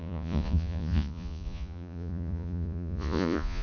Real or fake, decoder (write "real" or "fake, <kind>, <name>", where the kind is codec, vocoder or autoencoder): fake, vocoder, Vocos